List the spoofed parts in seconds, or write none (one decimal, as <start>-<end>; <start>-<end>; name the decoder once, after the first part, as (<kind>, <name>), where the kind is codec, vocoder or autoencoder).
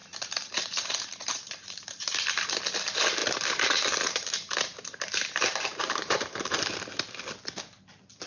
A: 0.0-2.6 (vocoder, BigVGAN v2); 3.2-6.6